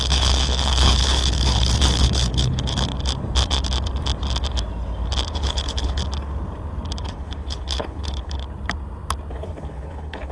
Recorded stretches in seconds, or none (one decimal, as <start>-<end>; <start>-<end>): 2.9-5.3; 6.0-7.0; 8.4-9.3